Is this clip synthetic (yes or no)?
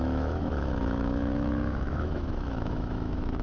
yes